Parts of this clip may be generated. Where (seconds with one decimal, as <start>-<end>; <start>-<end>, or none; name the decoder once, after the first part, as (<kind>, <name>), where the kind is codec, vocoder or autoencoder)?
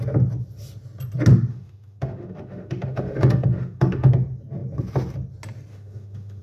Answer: 1.5-4.1 (autoencoder, DAC-VAE); 5.7-6.4